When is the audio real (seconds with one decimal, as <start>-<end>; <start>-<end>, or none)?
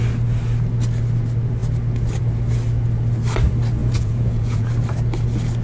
0.0-3.8; 4.7-5.6